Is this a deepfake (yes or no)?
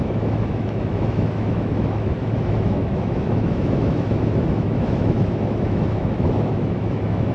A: yes